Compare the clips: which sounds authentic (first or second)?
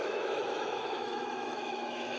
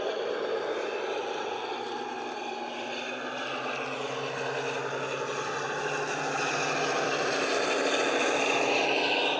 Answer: second